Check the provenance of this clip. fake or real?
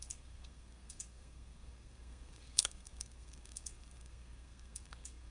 fake